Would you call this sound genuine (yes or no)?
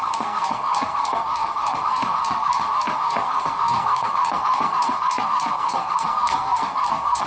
no